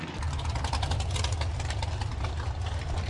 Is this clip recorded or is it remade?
recorded